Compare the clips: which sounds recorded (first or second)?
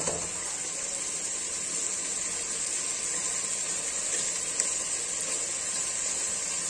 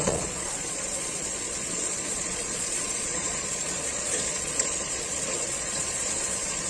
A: first